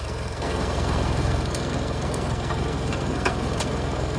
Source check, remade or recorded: remade